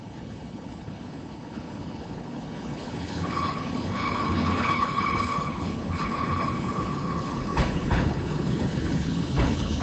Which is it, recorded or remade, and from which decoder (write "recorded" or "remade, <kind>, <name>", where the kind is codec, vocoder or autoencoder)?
remade, codec, HILCodec